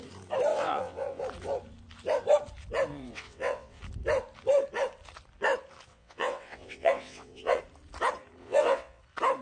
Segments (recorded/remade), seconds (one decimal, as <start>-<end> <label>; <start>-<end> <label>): 0.0-0.5 recorded; 0.5-1.2 remade; 1.2-2.9 recorded; 2.9-3.8 remade; 3.8-5.9 recorded; 5.9-7.6 remade; 7.6-8.4 recorded; 8.4-9.0 remade; 9.0-9.4 recorded